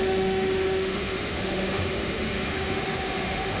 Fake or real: fake